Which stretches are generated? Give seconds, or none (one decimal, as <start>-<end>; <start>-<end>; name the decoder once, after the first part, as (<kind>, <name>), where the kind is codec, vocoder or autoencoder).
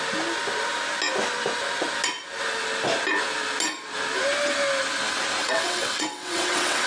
5.4-6.9 (vocoder, WaveNeXt)